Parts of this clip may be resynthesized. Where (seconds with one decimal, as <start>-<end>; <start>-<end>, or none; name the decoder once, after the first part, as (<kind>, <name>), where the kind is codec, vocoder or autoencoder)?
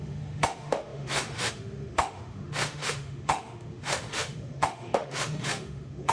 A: 0.0-6.1 (autoencoder, DAC-VAE)